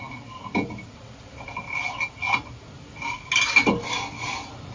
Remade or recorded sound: recorded